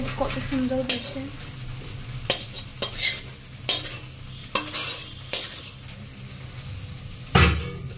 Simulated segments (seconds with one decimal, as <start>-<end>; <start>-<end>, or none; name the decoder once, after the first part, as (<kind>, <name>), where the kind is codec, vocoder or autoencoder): none